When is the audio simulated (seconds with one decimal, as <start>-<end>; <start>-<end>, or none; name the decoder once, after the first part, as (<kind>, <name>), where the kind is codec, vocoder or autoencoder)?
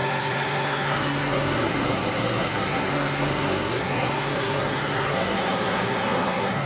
0.0-6.7 (codec, SNAC)